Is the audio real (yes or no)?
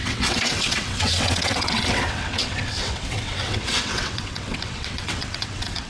no